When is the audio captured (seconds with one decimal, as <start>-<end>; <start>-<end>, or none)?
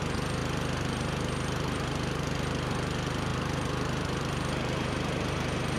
0.0-0.4; 2.7-3.3